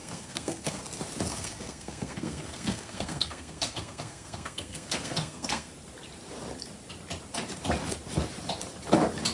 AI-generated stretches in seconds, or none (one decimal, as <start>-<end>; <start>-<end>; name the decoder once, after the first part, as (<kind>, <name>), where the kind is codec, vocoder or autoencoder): 0.0-0.8 (codec, SNAC); 1.3-5.7

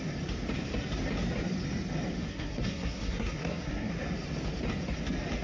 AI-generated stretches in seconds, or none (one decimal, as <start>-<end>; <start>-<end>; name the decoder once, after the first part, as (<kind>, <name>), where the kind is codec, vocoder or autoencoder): 2.3-3.9 (codec, SNAC)

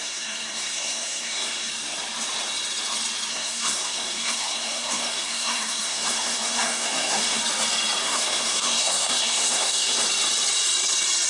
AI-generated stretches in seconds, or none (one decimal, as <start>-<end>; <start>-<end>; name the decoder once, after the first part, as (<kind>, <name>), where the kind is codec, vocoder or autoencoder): 0.0-1.7 (codec, SNAC); 3.3-7.4; 8.0-10.0

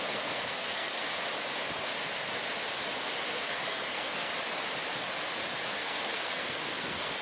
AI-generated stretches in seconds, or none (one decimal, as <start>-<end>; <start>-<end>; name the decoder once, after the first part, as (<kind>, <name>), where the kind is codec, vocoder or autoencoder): 0.0-1.0 (codec, SNAC); 3.5-4.3; 5.8-7.2

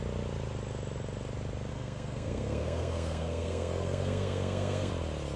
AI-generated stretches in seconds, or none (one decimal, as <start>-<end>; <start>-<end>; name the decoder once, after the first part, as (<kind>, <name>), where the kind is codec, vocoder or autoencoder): 1.7-4.9 (codec, SNAC)

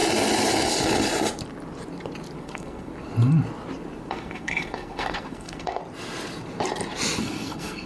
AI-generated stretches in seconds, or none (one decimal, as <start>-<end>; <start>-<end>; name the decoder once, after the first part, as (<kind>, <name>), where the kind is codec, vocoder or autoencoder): 2.4-2.9 (codec, SNAC); 4.0-5.8; 7.2-7.9